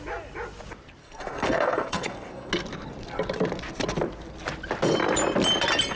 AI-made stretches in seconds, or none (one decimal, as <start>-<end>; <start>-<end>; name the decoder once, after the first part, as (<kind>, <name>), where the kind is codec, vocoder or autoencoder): 1.0-2.5 (codec, SNAC)